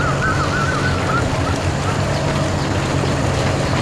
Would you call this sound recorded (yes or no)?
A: yes